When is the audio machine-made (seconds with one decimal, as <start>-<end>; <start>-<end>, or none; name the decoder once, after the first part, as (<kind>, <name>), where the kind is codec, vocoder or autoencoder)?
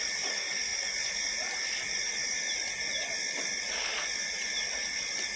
none